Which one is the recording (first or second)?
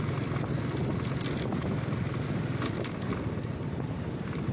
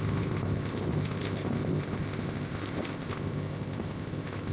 first